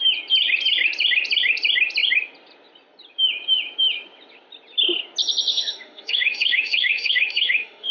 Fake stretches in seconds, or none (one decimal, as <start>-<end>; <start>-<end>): 5.5-7.9